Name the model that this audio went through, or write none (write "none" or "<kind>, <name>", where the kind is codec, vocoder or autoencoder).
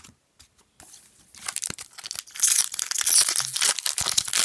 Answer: none